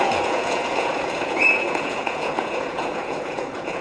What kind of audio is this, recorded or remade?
remade